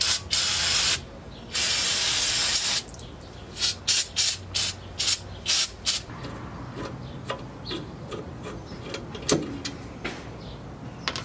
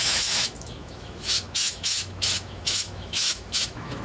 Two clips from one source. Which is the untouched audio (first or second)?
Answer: first